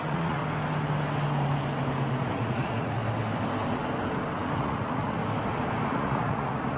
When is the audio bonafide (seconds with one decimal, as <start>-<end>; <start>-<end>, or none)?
0.4-2.1; 3.0-4.6; 5.2-5.9